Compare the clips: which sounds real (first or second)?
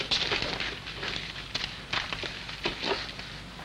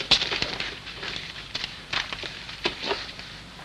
first